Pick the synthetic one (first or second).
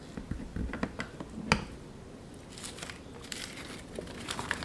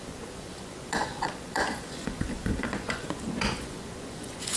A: second